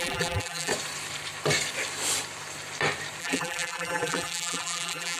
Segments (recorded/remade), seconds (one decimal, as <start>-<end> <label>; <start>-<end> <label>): 0.0-0.7 remade; 0.7-3.2 recorded; 3.2-5.2 remade